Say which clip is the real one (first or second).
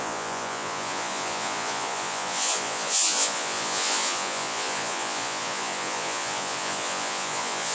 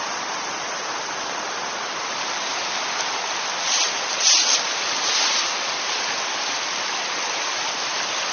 second